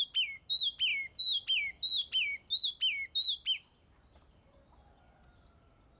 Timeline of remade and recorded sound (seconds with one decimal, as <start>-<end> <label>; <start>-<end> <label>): 0.0-6.0 recorded